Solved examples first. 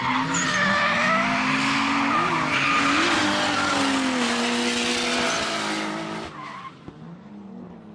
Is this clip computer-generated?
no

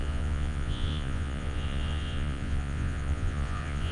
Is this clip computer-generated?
yes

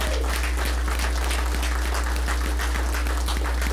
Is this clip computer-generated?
no